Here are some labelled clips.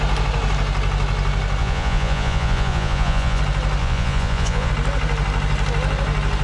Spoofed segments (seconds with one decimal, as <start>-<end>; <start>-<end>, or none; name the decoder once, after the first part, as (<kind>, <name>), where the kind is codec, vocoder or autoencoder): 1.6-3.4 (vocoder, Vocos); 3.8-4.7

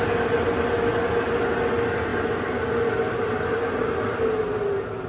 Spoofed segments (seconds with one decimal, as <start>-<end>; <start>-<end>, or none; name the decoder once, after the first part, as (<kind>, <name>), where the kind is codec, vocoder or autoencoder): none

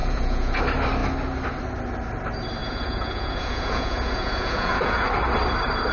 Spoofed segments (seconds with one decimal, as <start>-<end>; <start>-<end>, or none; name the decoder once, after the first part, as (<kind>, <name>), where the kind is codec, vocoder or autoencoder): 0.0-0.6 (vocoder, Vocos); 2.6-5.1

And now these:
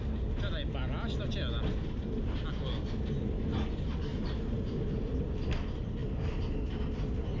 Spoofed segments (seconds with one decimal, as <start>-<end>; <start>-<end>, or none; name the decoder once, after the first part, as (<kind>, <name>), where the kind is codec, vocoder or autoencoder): none

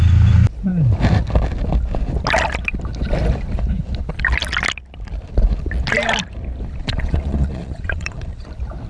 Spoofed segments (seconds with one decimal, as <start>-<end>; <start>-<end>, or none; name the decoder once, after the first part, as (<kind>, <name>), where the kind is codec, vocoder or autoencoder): 6.8-8.5 (vocoder, Vocos)

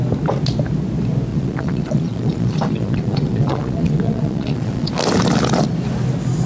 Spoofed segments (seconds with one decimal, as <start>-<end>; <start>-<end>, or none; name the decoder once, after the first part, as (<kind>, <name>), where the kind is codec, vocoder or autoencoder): 1.3-4.9 (vocoder, Vocos)